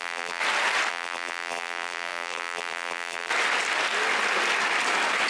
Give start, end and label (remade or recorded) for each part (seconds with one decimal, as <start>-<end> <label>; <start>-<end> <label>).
0.0-0.4 remade; 0.4-0.9 recorded; 0.9-3.3 remade; 3.3-5.3 recorded